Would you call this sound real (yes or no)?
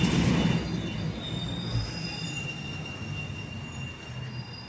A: yes